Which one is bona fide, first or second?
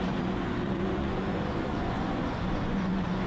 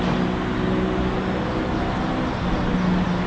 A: second